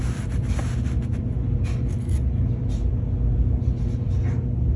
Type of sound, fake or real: real